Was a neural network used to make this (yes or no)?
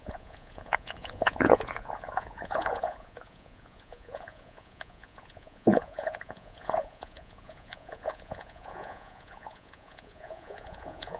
yes